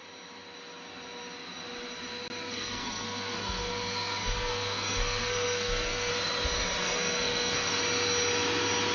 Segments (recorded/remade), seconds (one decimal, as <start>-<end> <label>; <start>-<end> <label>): 0.0-2.4 recorded; 2.4-6.1 remade; 6.1-6.8 recorded; 6.8-7.8 remade; 7.8-8.9 recorded